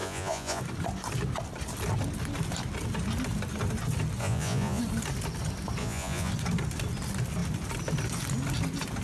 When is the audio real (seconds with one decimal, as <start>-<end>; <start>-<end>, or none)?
0.6-4.2; 4.8-5.8; 6.3-9.0